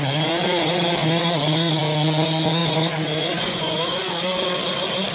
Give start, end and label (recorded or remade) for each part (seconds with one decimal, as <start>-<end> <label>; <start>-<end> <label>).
0.0-1.0 recorded; 1.0-1.8 remade; 1.8-2.6 recorded; 2.6-4.4 remade; 4.4-5.1 recorded